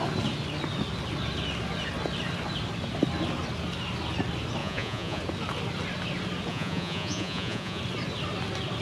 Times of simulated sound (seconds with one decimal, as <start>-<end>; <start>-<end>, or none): 4.6-5.2; 6.5-7.8